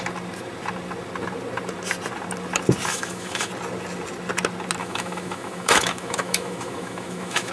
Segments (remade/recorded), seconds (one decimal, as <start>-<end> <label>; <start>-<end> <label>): 0.0-2.9 recorded; 2.9-3.5 remade; 3.5-4.8 recorded; 4.8-7.5 remade

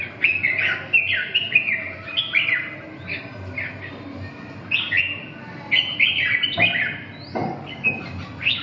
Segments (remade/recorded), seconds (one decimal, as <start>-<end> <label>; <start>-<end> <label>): 0.0-8.6 recorded